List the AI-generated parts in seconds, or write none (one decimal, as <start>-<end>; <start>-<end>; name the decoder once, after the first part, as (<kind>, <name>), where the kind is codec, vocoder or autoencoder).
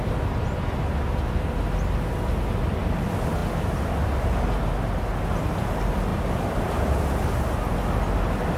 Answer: none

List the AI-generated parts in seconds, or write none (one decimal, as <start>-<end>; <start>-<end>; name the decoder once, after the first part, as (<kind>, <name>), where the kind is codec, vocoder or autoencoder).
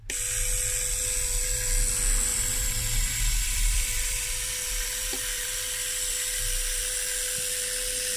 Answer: 2.3-6.8 (vocoder, BigVGAN v2)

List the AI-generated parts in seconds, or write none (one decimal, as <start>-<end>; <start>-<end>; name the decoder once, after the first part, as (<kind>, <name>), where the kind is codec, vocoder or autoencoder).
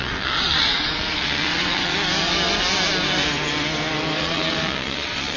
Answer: 0.0-1.9 (vocoder, WaveNeXt); 4.2-5.4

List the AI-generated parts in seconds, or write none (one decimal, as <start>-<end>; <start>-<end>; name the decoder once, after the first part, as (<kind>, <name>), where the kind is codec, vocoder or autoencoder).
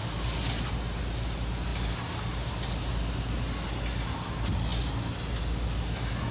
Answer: none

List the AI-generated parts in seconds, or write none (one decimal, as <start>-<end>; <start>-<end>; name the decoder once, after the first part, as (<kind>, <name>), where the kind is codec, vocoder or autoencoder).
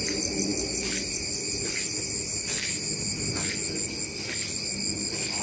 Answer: none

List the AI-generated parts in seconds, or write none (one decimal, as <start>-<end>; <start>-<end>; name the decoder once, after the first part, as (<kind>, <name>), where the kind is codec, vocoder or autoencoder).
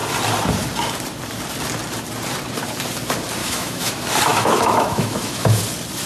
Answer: 3.4-3.9 (autoencoder, DAC-VAE); 4.3-5.6